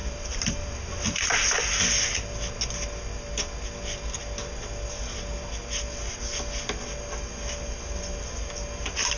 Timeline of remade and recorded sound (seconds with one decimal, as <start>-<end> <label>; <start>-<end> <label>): 0.0-1.6 remade; 1.6-9.2 recorded